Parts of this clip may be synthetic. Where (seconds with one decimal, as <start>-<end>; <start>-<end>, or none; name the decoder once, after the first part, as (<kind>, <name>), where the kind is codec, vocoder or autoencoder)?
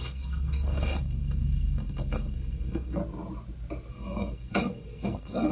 0.0-3.0 (codec, SNAC); 3.9-5.5